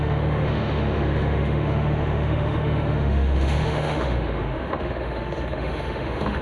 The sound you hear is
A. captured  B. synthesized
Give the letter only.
B